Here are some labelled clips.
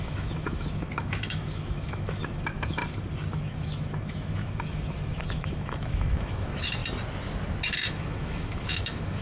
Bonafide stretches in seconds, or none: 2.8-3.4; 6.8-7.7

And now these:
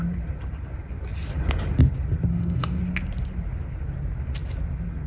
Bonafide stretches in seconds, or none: 0.0-2.3; 2.8-5.1

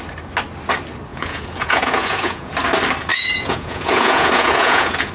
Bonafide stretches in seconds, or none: 0.0-1.1; 2.5-3.1

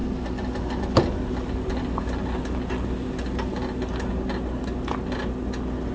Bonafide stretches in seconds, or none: 0.0-5.9

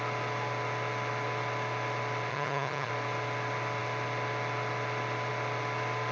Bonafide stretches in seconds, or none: 0.0-2.3; 2.9-6.1

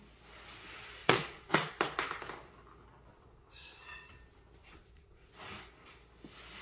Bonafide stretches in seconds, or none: 0.0-1.0; 1.7-3.1; 4.1-4.6; 5.3-6.6